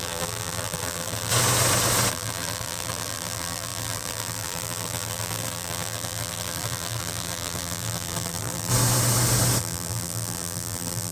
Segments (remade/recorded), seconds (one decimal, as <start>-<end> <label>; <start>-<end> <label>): 0.0-1.3 remade; 1.3-2.1 recorded; 2.1-8.7 remade; 8.7-9.6 recorded; 9.6-11.1 remade